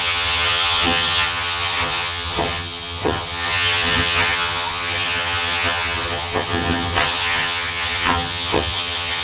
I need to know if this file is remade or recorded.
remade